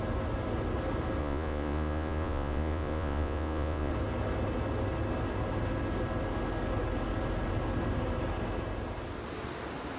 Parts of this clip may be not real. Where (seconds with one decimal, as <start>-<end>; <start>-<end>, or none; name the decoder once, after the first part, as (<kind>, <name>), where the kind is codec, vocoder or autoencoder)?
1.2-3.9 (vocoder, Vocos)